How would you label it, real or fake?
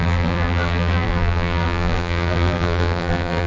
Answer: fake